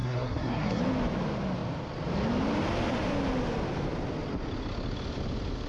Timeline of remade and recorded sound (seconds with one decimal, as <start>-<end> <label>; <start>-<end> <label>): 0.0-0.8 remade; 0.8-5.7 recorded